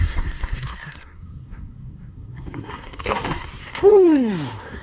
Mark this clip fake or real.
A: fake